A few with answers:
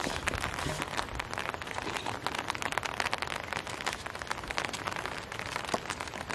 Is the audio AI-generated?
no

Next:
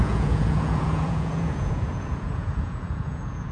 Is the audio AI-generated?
yes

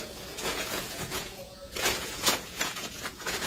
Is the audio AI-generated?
yes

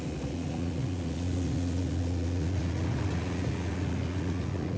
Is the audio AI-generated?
yes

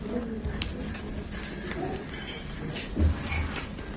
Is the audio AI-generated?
no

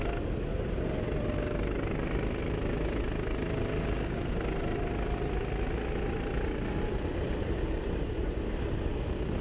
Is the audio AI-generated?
no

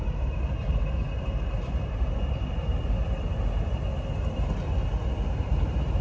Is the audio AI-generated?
no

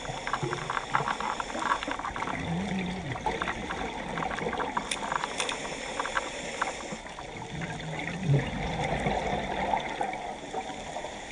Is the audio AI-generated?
no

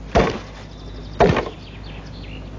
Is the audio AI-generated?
no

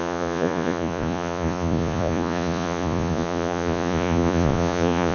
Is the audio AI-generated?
yes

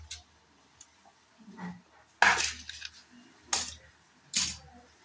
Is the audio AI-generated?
no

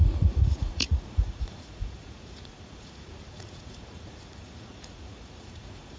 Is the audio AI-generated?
yes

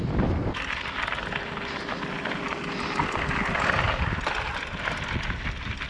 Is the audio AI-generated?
no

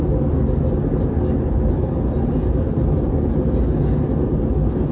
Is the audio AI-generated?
no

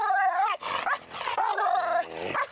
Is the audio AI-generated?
no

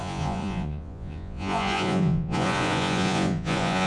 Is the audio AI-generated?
yes